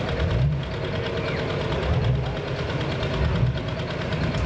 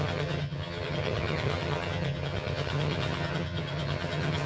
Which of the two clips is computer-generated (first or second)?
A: second